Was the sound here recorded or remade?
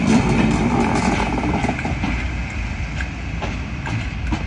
recorded